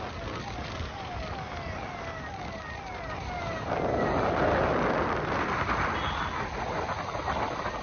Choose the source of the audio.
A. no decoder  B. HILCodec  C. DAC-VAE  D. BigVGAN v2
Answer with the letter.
A